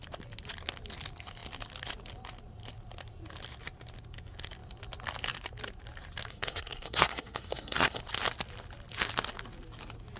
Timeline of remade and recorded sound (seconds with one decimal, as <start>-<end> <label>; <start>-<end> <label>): 0.0-6.3 recorded; 6.3-8.0 remade; 8.0-10.2 recorded